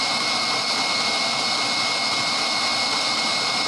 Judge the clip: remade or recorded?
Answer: recorded